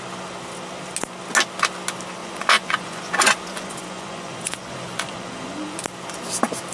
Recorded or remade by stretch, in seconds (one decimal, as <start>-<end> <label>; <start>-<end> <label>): 0.0-2.2 recorded; 2.2-5.8 remade; 5.8-6.7 recorded